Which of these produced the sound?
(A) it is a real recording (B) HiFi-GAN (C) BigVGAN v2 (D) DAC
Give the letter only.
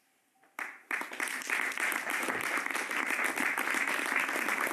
A